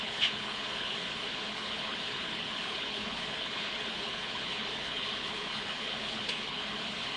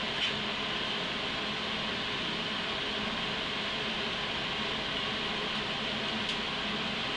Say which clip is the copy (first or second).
first